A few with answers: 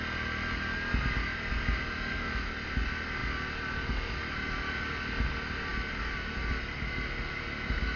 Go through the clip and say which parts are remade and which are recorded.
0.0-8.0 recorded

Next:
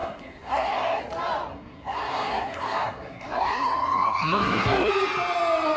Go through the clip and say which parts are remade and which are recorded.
0.0-1.0 remade; 1.0-1.5 recorded; 1.5-4.9 remade; 4.9-5.8 recorded

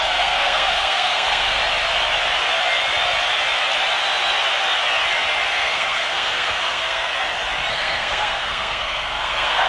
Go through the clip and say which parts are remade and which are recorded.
0.0-1.6 remade; 1.6-5.5 recorded; 5.5-7.1 remade; 7.1-7.7 recorded; 7.7-9.7 remade

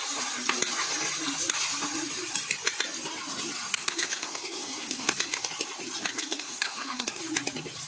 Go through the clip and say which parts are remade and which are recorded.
0.0-3.7 recorded; 3.7-5.4 remade; 5.4-6.1 recorded; 6.1-7.2 remade; 7.2-7.9 recorded

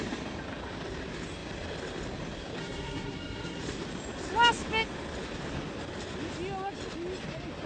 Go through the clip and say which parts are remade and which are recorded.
0.0-2.6 recorded; 2.6-3.6 remade; 3.6-7.7 recorded

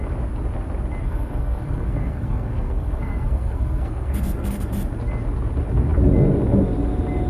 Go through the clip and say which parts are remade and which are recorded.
0.0-1.0 recorded; 1.0-4.7 remade; 4.7-7.3 recorded